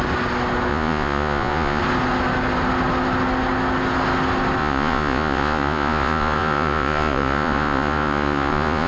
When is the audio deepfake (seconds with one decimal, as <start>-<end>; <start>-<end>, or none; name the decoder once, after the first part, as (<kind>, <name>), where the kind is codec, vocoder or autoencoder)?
0.7-1.8 (vocoder, Vocos); 4.6-8.9